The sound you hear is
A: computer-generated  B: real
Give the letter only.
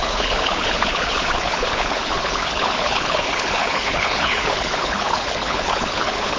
A